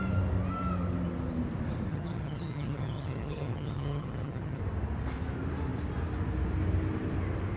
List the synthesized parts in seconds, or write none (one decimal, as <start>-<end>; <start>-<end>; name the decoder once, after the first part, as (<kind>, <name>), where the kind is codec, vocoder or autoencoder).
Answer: 1.9-4.6 (vocoder, HiFi-GAN)